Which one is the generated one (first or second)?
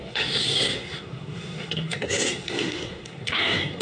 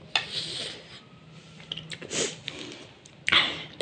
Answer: first